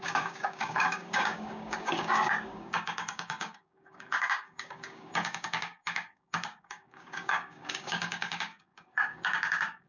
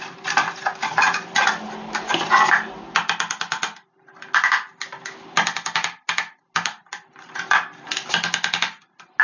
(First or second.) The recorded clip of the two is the second